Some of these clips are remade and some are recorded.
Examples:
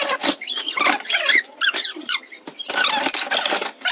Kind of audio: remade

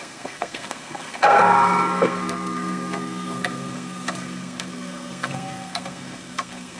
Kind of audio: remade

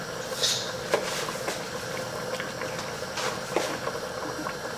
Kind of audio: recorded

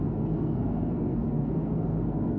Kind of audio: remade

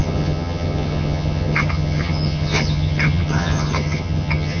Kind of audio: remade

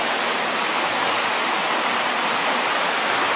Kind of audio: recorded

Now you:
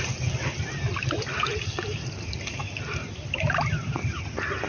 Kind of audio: recorded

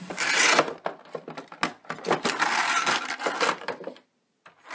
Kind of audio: recorded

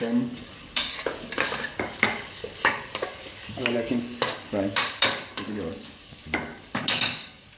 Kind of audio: remade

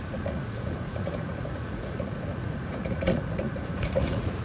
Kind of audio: remade